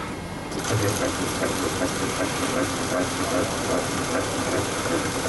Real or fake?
fake